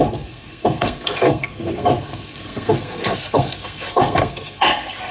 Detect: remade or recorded remade